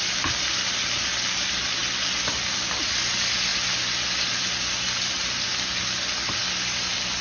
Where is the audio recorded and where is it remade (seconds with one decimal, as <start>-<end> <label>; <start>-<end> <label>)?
0.0-7.2 recorded